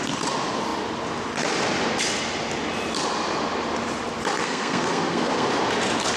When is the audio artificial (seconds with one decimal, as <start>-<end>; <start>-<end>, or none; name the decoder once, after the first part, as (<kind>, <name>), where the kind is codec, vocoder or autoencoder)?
4.4-5.5 (codec, SNAC)